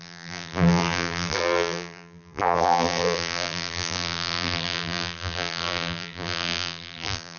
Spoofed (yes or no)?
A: yes